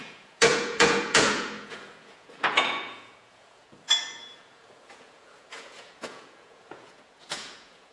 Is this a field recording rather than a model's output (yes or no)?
no